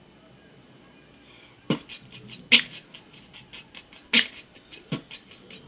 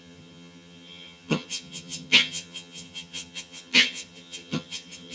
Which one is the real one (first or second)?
first